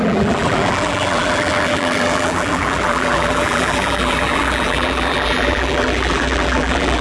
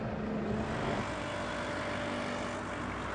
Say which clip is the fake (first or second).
first